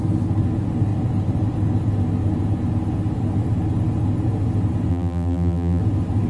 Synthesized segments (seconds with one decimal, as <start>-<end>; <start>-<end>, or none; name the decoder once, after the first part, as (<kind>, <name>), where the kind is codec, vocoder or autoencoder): 4.9-5.8 (vocoder, BigVGAN v2)